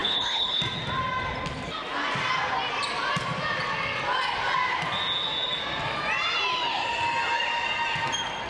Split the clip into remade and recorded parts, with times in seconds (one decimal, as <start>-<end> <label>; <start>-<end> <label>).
0.0-0.6 remade; 0.6-8.5 recorded